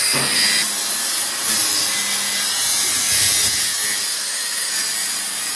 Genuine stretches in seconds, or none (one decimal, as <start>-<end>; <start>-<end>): 0.0-4.1; 4.7-5.6